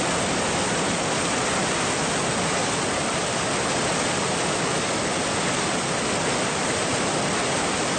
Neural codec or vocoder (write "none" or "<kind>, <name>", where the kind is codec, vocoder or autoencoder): none